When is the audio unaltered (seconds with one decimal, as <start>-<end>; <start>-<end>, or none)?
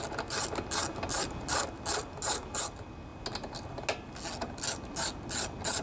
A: 0.0-5.8